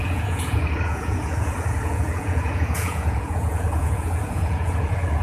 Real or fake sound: fake